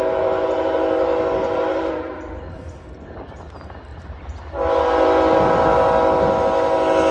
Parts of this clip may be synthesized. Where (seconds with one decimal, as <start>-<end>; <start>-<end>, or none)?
0.4-3.2; 3.9-4.8